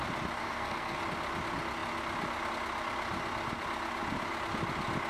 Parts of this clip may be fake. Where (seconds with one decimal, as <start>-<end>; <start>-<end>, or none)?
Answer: 0.4-1.0

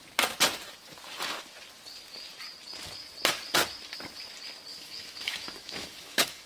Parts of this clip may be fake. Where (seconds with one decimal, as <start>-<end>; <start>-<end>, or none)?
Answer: 4.7-6.5

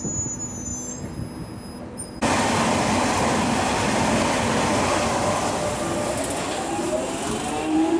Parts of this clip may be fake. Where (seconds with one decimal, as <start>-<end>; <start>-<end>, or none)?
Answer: none

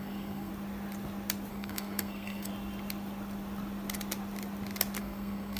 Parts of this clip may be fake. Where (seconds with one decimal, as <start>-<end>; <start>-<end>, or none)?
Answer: 0.0-0.5; 1.5-2.5; 5.0-5.6